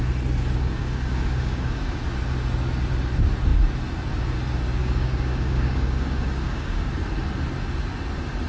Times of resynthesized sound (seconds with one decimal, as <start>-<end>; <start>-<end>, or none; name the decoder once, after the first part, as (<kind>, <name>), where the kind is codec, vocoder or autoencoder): 0.8-1.8 (codec, DAC); 4.8-6.9